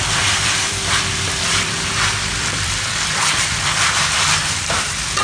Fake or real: fake